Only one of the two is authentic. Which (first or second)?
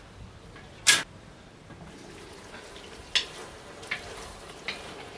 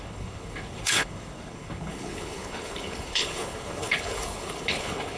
first